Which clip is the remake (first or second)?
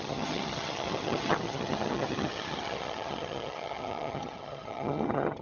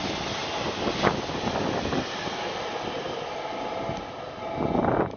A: first